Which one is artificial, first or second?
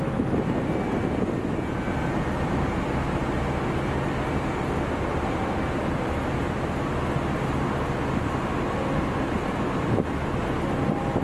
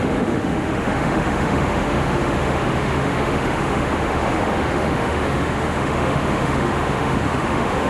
second